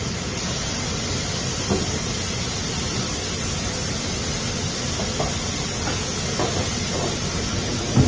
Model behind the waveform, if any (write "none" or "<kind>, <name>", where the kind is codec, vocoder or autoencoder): none